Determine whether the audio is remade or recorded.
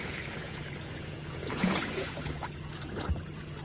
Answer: remade